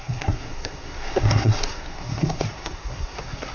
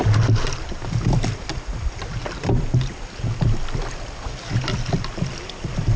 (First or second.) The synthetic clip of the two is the first